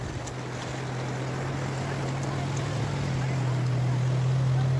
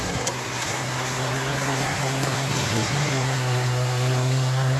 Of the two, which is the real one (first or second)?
first